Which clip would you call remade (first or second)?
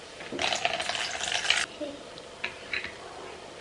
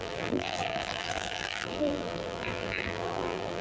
second